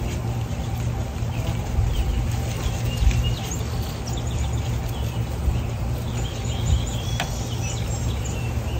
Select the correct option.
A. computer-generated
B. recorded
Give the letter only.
B